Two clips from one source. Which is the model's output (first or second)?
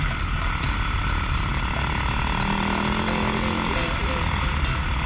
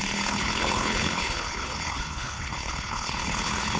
second